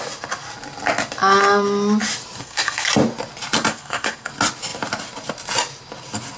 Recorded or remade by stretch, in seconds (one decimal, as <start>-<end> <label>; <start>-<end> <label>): 0.0-2.4 recorded; 2.4-2.9 remade; 2.9-3.7 recorded; 3.7-4.3 remade; 4.3-6.4 recorded